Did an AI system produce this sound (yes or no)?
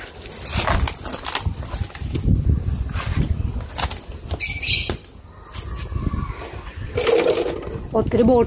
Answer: no